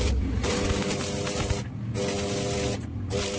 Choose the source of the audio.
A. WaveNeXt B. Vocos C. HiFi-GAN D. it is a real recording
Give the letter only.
D